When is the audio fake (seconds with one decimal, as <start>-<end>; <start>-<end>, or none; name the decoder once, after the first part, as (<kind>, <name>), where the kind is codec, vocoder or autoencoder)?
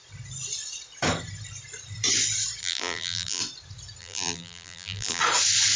2.6-3.4 (vocoder, BigVGAN v2); 4.0-5.2